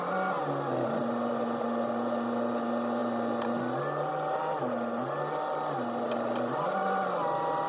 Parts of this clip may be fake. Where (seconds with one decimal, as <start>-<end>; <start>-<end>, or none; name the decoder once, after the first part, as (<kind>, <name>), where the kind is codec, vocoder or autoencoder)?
none